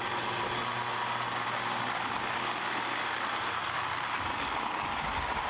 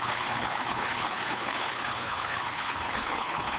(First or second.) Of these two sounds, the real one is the first